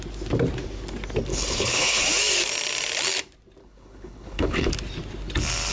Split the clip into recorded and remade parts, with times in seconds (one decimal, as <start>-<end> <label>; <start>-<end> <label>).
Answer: 0.0-1.3 recorded; 1.3-2.0 remade; 2.0-3.6 recorded; 3.6-4.7 remade; 4.7-5.7 recorded